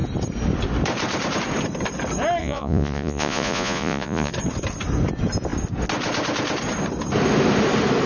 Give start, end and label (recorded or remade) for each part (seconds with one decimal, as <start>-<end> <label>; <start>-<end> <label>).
0.0-2.4 recorded; 2.4-4.3 remade; 4.3-8.1 recorded